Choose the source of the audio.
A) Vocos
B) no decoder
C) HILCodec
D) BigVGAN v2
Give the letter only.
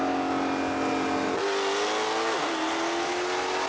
B